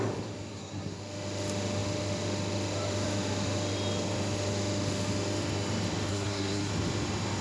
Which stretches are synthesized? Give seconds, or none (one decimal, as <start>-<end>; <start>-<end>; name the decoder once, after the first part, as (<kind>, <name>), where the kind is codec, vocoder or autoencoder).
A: 0.5-1.0 (codec, SNAC); 6.1-6.7